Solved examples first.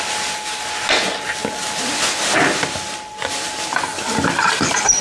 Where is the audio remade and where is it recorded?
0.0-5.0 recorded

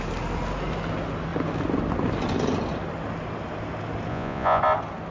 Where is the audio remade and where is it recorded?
0.0-4.1 recorded; 4.1-4.6 remade; 4.6-5.1 recorded

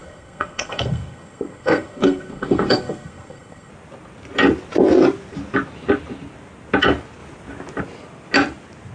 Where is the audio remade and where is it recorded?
0.0-3.7 remade; 3.7-8.9 recorded